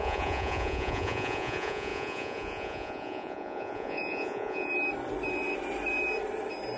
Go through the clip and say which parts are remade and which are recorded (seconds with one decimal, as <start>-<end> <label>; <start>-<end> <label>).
0.0-4.7 remade; 4.7-6.8 recorded